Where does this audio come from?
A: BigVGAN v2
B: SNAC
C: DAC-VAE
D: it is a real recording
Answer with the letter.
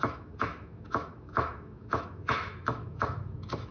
C